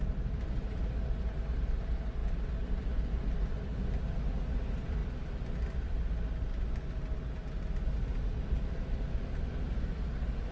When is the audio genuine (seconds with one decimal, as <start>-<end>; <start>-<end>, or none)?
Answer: 0.0-10.5